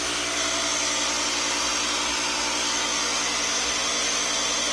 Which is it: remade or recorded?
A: recorded